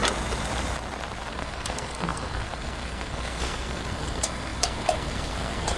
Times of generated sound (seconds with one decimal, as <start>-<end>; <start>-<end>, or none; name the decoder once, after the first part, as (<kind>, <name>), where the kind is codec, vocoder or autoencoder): 1.3-5.8 (codec, SNAC)